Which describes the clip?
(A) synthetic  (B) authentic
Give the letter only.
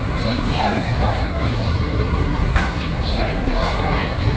A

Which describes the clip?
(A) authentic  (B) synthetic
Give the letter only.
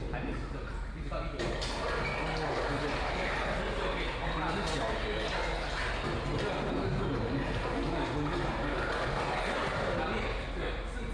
A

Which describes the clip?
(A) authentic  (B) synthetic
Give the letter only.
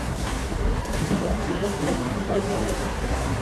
B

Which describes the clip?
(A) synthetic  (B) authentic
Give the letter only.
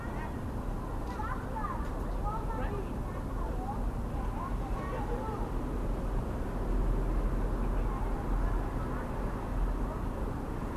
B